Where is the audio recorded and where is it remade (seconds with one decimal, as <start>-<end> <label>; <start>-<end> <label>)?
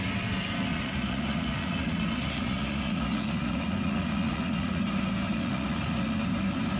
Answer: 0.0-0.7 recorded; 0.7-4.8 remade; 4.8-5.3 recorded; 5.3-6.2 remade; 6.2-6.8 recorded